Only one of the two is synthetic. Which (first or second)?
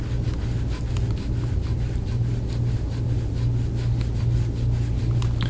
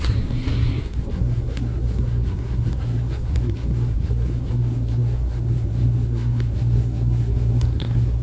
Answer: second